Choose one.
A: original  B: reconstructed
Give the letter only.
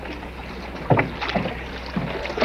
A